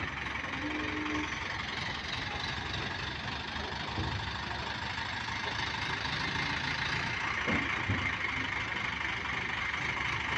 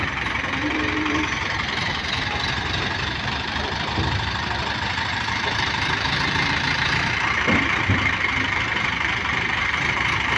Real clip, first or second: first